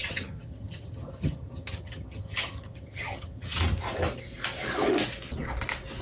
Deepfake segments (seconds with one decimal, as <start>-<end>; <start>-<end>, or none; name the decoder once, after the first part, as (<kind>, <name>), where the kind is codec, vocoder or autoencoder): 0.0-3.6 (vocoder, HiFi-GAN)